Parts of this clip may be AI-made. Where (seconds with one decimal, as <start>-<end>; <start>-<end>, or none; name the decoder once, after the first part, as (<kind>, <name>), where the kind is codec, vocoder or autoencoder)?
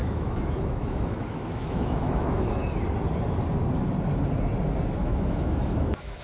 0.0-2.6 (autoencoder, DAC-VAE); 5.0-6.2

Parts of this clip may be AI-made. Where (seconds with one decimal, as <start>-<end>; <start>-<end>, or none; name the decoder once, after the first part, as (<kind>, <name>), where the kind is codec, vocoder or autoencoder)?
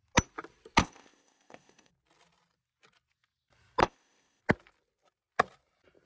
0.8-1.9 (codec, ZipCodec); 3.8-4.4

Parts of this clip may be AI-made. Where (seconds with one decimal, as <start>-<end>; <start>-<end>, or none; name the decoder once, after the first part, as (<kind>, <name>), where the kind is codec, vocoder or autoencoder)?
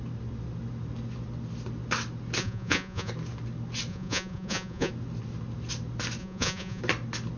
2.4-3.1 (vocoder, Vocos); 3.9-4.9; 6.2-6.8